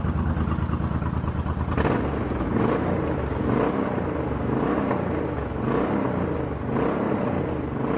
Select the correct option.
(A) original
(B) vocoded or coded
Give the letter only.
A